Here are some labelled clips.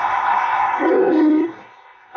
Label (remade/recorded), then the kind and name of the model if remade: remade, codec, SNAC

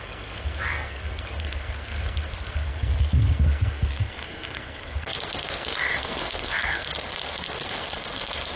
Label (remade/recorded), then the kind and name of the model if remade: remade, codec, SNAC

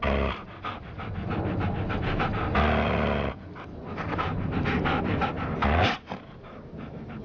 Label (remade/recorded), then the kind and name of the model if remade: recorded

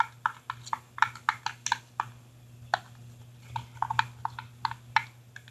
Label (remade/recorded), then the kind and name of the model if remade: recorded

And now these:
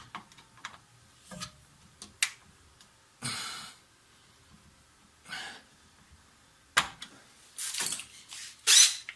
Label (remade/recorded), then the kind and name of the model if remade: recorded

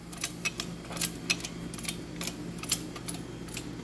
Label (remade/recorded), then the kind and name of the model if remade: recorded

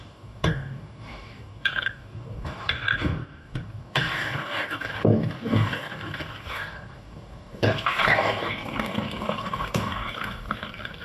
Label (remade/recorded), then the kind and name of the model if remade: remade, codec, DAC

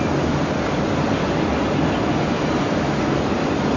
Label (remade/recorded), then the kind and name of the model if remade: recorded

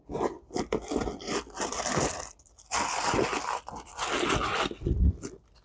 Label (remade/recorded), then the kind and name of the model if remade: recorded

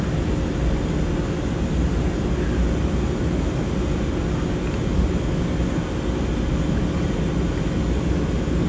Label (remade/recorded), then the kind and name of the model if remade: recorded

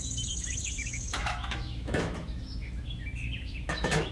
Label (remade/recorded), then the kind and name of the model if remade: remade, autoencoder, DAC-VAE